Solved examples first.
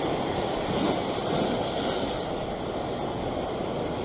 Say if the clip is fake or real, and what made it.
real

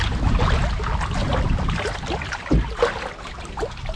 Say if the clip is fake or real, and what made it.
real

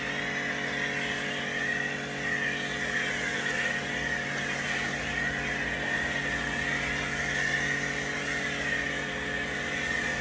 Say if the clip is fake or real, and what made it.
real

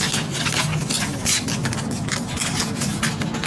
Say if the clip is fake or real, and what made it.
real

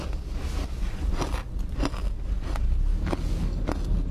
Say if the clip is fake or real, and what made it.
real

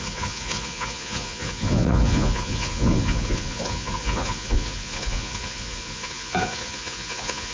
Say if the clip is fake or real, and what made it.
fake, vocoder, Vocos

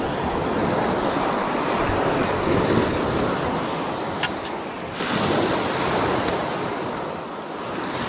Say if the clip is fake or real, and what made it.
real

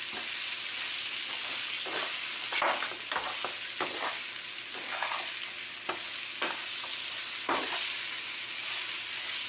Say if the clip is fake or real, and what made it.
real